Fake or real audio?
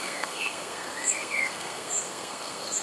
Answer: fake